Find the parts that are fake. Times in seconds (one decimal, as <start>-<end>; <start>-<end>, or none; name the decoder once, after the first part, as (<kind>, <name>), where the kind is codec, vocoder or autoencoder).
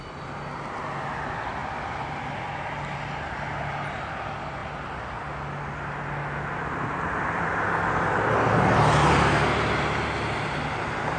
none